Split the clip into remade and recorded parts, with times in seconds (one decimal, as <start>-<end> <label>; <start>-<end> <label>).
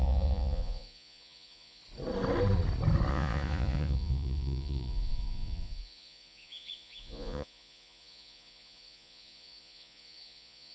0.0-1.8 remade; 1.8-3.1 recorded; 3.1-10.7 remade